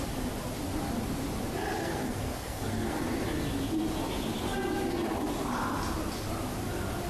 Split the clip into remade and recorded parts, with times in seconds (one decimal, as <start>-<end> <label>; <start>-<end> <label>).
0.0-1.8 recorded; 1.8-3.0 remade; 3.0-7.1 recorded